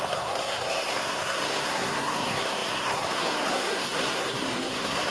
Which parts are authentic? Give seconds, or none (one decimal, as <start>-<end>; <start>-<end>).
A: none